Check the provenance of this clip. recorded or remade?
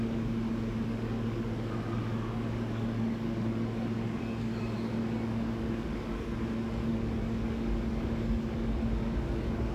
remade